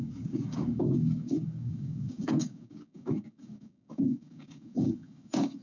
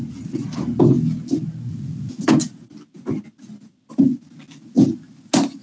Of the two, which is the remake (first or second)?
first